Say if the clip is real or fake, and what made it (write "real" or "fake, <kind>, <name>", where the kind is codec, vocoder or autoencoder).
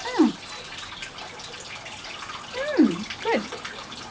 real